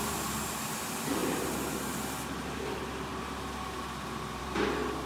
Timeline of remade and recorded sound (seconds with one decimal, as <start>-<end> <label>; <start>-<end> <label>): 0.0-5.1 recorded